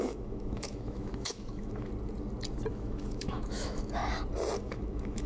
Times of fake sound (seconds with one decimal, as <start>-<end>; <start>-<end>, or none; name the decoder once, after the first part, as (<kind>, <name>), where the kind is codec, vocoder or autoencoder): 0.0-1.9 (autoencoder, DAC-VAE); 2.7-4.0; 4.6-5.3